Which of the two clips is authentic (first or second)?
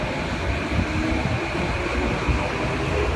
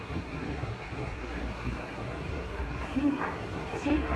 first